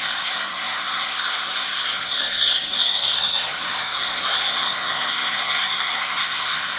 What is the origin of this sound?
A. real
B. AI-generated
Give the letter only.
B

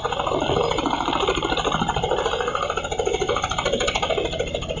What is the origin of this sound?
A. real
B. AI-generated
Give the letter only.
A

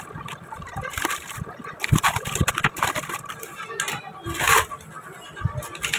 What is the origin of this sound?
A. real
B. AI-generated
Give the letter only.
A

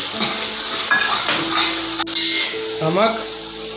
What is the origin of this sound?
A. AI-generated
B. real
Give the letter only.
B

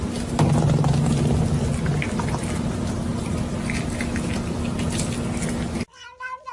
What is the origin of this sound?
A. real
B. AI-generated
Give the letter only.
A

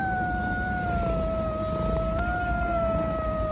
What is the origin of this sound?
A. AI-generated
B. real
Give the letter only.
B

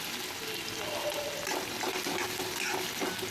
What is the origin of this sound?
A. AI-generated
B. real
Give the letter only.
B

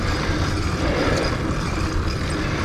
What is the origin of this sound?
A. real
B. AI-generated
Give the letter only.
A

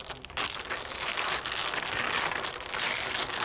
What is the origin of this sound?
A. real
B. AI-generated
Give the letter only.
A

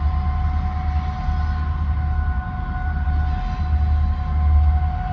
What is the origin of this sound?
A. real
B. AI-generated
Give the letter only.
A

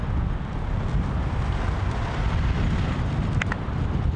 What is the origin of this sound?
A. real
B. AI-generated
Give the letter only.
A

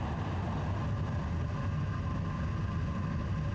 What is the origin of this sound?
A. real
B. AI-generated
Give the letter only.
A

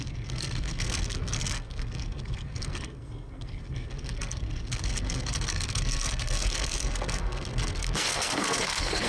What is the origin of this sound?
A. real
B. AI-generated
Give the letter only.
B